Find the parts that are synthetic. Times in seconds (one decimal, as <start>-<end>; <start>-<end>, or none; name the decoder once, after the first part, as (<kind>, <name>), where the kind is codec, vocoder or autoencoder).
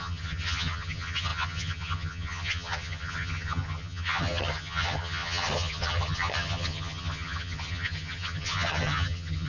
0.0-9.5 (vocoder, HiFi-GAN)